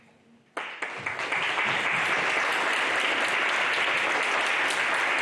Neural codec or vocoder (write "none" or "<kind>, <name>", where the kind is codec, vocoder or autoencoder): none